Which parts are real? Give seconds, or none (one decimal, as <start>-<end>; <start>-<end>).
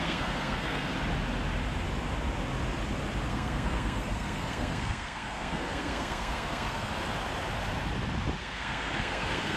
0.9-3.3; 6.9-8.4